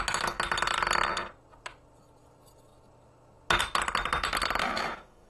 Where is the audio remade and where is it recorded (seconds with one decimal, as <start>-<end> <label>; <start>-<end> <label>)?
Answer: 0.0-4.6 recorded; 4.6-5.3 remade